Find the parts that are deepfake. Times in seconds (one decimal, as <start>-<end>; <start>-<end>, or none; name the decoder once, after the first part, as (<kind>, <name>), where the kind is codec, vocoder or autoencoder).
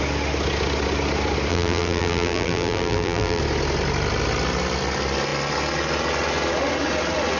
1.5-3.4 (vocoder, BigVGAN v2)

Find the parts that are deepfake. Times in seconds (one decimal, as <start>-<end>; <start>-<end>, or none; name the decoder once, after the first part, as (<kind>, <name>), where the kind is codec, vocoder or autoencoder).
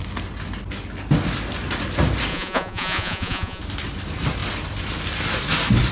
2.3-3.6 (vocoder, Vocos)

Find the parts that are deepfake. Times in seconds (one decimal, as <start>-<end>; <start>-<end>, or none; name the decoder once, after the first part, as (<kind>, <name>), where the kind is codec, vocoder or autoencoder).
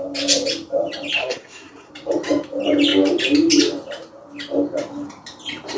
1.2-1.9 (codec, SNAC)